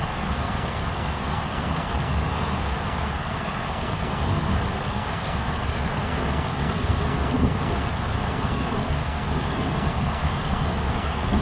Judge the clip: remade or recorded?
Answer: remade